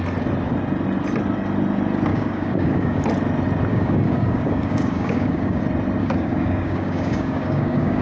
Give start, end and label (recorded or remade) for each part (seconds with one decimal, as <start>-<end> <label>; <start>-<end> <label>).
0.0-2.1 recorded; 2.1-3.0 remade; 3.0-3.7 recorded; 3.7-5.6 remade; 5.6-6.0 recorded; 6.0-8.0 remade